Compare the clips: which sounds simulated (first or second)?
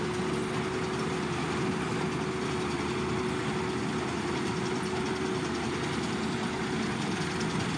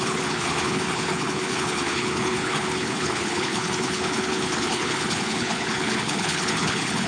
second